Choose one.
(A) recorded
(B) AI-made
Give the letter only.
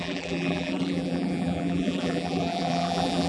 B